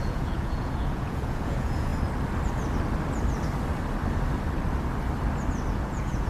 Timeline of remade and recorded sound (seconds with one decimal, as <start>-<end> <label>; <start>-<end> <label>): 0.0-1.9 remade; 1.9-5.7 recorded; 5.7-6.3 remade